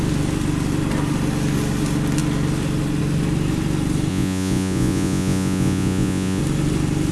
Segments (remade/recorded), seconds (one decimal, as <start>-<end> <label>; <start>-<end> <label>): 0.0-4.1 recorded; 4.1-6.4 remade; 6.4-7.1 recorded